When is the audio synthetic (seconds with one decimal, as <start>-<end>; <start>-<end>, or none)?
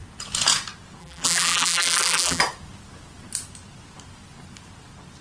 1.0-2.4